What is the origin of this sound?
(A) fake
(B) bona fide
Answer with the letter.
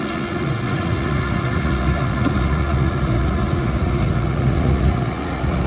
A